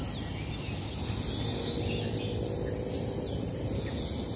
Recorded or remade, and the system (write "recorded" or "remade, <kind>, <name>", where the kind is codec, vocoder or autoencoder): recorded